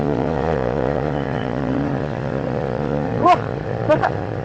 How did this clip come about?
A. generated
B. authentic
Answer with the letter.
A